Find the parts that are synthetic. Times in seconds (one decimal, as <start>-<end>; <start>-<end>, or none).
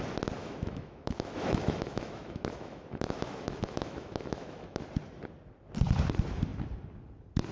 0.4-4.8